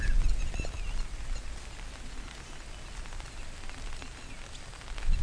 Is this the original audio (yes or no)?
yes